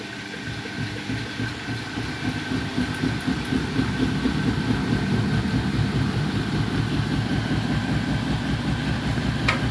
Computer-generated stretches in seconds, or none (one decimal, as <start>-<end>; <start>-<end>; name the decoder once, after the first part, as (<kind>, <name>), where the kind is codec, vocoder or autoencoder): none